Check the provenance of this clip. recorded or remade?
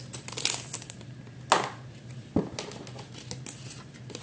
recorded